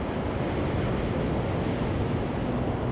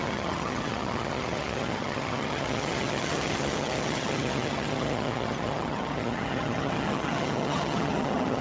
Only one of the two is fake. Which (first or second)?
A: second